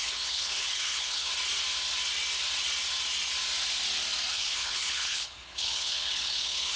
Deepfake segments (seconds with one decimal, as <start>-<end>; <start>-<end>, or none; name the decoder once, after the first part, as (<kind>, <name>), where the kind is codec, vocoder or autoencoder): 0.0-1.3 (codec, HILCodec); 4.3-6.8